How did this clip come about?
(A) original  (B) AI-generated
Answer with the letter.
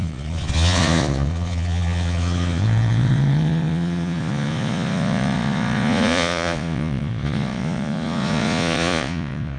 B